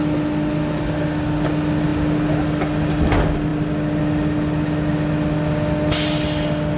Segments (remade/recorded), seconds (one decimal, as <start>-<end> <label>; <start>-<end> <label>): 0.0-6.8 recorded